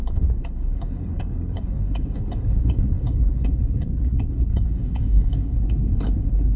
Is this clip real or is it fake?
fake